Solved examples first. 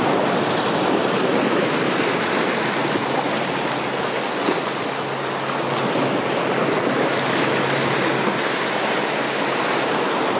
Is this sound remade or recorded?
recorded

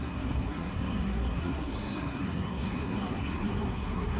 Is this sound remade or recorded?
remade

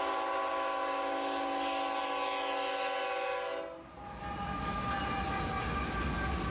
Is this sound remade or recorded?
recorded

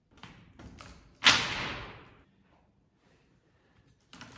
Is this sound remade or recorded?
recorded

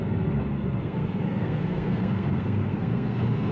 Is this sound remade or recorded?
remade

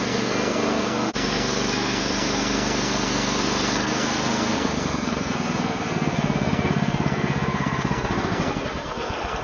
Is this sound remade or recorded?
remade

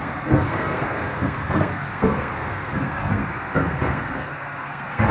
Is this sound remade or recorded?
remade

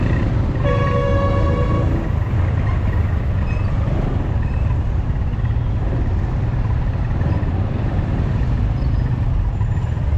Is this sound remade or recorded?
recorded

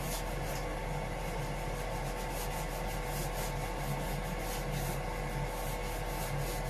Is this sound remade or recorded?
recorded